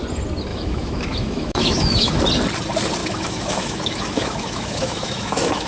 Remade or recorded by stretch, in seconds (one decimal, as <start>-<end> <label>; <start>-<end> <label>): 0.0-0.5 recorded; 0.5-2.2 remade; 2.2-3.0 recorded; 3.0-5.7 remade